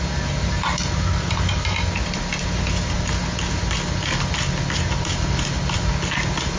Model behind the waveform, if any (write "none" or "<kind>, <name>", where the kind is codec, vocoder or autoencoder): none